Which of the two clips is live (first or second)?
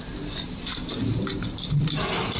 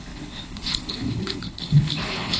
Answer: first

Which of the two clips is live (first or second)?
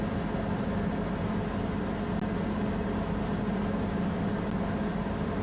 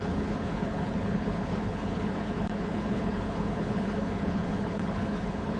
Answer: first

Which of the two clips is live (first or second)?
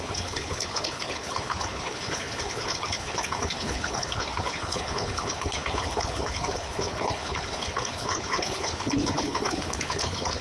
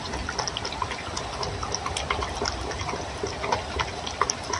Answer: second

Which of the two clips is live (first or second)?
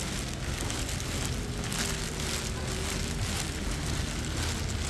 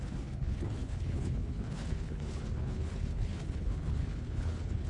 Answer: first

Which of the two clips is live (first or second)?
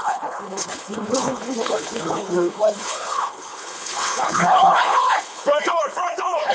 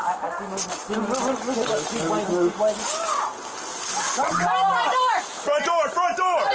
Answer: second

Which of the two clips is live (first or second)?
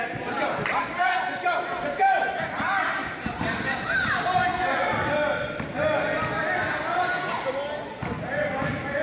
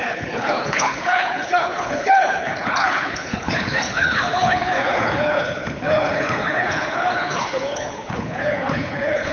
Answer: first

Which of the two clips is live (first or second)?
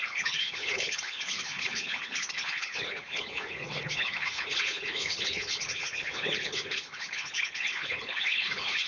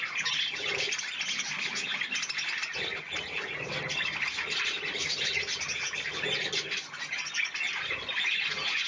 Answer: second